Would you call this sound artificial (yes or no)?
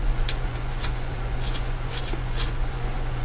yes